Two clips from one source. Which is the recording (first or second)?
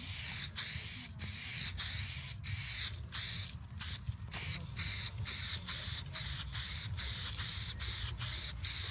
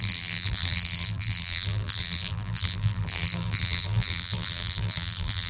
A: first